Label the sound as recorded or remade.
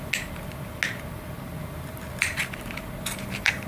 recorded